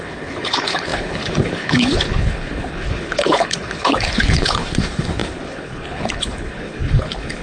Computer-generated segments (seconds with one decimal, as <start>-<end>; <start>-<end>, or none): 0.0-7.4